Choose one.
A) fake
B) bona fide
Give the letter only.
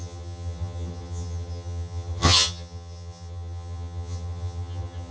A